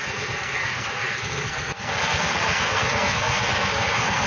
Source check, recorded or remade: remade